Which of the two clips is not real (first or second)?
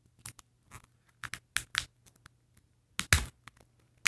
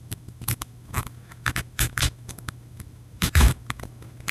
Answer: second